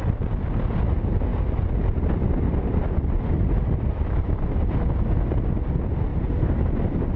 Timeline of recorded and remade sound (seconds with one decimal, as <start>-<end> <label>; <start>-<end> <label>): 0.0-6.1 recorded; 6.1-6.7 remade; 6.7-7.2 recorded